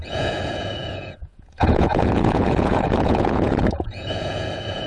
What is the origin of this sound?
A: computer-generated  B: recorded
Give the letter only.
A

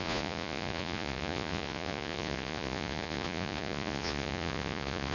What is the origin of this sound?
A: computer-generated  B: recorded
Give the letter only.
A